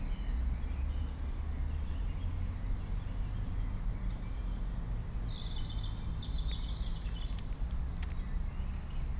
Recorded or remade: recorded